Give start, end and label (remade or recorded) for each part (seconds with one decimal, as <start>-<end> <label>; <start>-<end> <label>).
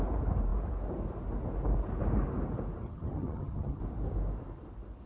0.0-2.8 recorded; 2.8-3.8 remade; 3.8-5.1 recorded